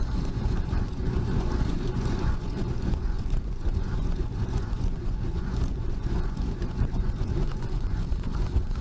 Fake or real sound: fake